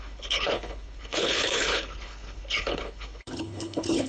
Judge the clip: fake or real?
fake